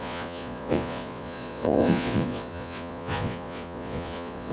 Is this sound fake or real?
fake